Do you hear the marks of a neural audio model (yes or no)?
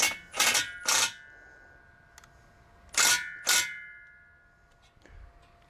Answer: no